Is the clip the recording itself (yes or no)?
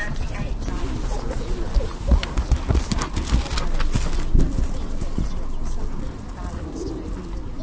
yes